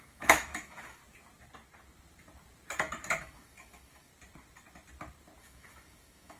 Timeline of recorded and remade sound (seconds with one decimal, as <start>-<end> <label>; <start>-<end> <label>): 0.0-1.0 remade; 1.0-3.2 recorded; 3.2-4.1 remade; 4.1-5.4 recorded; 5.4-6.4 remade